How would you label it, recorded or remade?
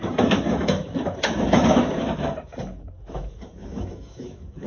remade